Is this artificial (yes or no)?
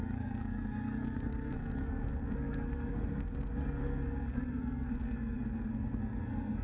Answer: yes